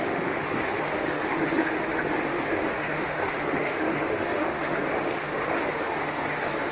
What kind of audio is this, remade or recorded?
remade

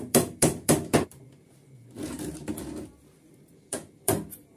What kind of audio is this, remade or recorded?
remade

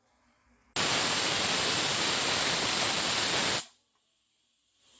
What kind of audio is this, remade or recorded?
recorded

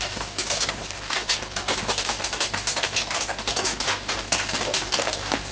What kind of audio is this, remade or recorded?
remade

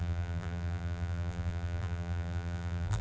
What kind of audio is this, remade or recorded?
remade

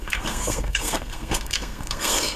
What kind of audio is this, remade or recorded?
remade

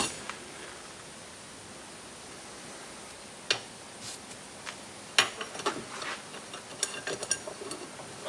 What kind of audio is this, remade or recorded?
recorded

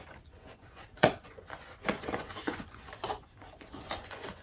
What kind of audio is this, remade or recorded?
remade